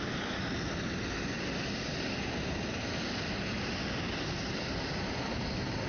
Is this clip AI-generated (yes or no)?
no